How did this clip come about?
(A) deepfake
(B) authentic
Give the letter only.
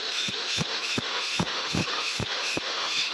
A